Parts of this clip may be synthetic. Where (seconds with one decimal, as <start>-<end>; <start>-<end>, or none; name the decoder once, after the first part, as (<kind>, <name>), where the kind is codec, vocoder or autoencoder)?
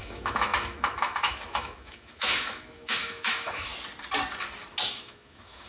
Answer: 0.0-3.7 (autoencoder, DAC-VAE); 4.9-5.7